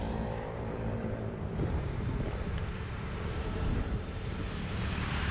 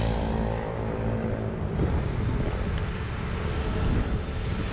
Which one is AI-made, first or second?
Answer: first